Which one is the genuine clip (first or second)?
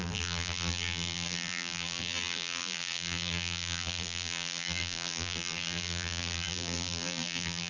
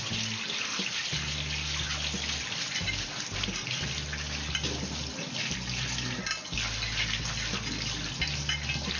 second